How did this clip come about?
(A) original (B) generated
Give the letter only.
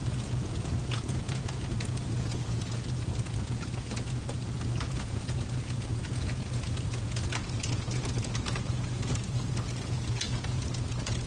B